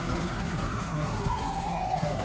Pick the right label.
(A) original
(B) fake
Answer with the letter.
B